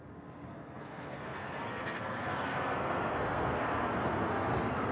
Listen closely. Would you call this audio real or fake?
fake